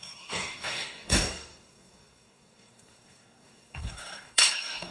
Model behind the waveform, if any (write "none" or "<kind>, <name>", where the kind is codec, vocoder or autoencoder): codec, SNAC